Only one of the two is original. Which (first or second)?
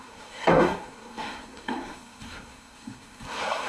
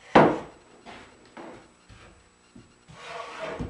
second